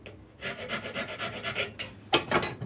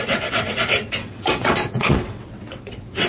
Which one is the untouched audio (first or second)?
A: first